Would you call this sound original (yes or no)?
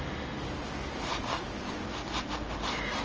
yes